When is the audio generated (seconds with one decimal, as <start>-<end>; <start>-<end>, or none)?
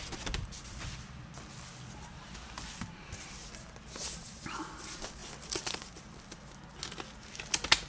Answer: none